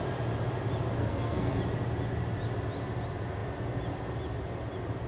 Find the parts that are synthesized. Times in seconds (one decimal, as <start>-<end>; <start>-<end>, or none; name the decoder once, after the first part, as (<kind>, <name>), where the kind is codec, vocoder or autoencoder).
1.0-1.6 (codec, SNAC)